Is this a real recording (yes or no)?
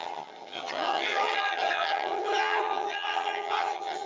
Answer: no